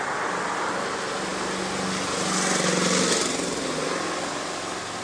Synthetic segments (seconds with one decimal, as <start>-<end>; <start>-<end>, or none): none